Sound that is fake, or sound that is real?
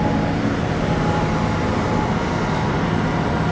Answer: real